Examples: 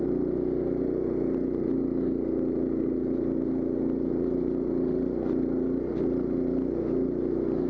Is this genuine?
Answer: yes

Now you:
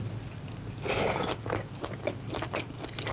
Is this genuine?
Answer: yes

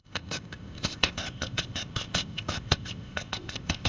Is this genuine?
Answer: no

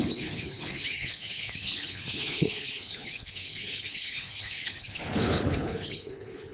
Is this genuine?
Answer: no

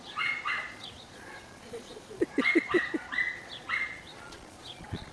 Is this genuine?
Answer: no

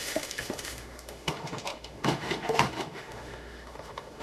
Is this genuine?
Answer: no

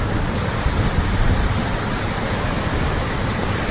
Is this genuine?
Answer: yes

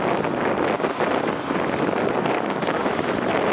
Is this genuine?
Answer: yes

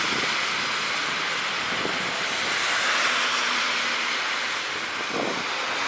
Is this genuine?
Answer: yes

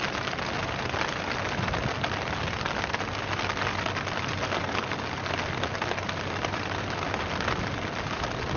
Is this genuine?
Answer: yes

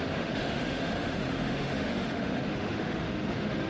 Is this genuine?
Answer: no